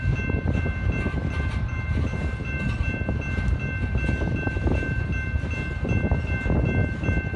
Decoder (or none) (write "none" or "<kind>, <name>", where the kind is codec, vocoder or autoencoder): none